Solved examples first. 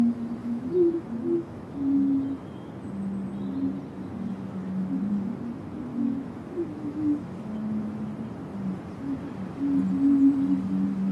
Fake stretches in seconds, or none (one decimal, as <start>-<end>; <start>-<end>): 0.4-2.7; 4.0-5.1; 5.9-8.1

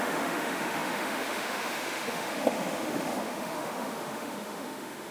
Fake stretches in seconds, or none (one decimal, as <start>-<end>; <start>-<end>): 0.0-5.1

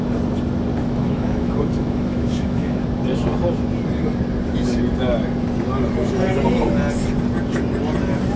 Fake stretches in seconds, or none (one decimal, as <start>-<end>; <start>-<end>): 0.8-2.7

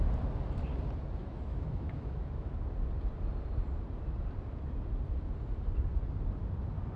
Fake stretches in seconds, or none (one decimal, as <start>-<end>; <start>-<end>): 1.2-2.5

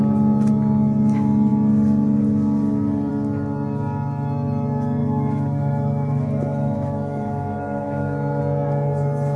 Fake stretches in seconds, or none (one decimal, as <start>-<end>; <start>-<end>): 5.0-8.4

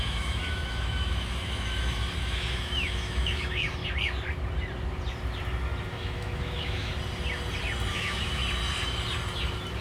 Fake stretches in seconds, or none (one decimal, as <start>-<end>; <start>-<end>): 0.0-3.8; 5.9-6.9; 7.9-8.4